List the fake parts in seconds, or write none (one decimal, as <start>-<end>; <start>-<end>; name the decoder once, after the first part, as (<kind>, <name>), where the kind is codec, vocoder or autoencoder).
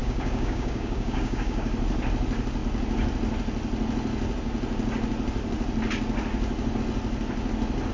0.0-1.7 (codec, DAC)